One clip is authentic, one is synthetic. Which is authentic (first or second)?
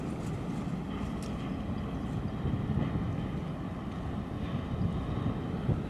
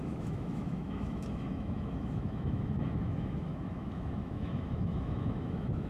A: first